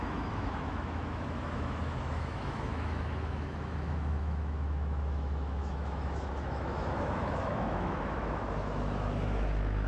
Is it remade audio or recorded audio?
remade